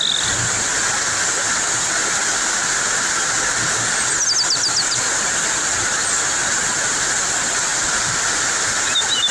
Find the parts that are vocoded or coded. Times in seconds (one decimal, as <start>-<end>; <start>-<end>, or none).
7.7-8.4